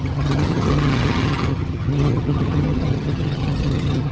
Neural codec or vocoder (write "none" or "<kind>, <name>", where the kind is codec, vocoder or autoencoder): vocoder, HiFi-GAN